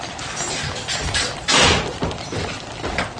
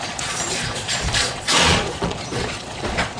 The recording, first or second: first